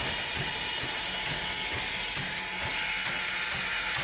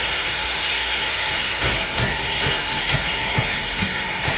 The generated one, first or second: second